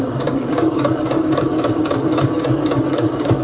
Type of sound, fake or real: fake